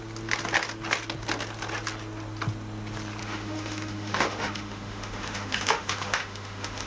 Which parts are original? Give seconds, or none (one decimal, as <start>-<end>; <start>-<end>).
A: 0.0-3.2